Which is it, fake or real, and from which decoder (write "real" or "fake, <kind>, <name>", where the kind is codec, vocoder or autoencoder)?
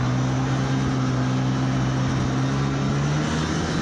real